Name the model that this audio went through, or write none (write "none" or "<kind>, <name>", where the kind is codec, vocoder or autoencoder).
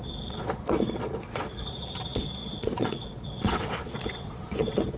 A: vocoder, Vocos